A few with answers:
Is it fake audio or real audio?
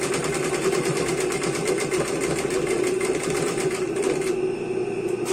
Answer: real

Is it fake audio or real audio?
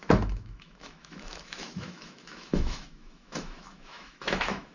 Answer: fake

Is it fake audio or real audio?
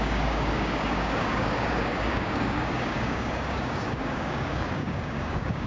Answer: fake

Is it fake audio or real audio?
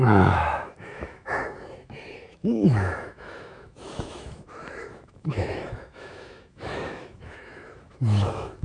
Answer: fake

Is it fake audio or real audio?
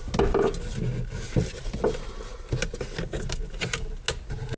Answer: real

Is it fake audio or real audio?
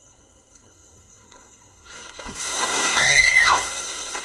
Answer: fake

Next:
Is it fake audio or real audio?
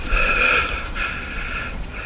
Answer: fake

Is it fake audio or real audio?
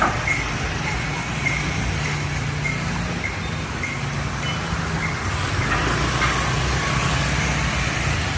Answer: real